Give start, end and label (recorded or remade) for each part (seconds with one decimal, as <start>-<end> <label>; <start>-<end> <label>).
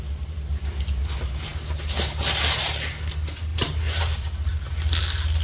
0.0-5.4 recorded